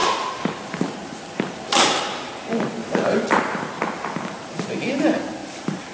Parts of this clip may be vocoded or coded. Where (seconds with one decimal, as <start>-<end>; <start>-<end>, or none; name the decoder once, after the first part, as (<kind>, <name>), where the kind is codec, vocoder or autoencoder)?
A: 2.8-3.3 (vocoder, BigVGAN v2); 5.4-5.9